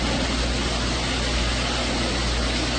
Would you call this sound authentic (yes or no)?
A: yes